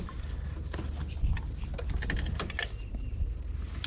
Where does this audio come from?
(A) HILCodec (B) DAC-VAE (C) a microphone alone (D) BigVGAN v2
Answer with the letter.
C